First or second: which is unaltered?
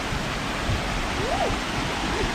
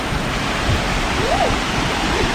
first